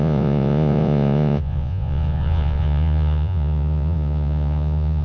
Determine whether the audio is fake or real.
fake